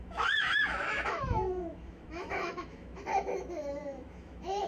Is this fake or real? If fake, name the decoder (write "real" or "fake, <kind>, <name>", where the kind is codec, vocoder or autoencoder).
fake, autoencoder, DAC-VAE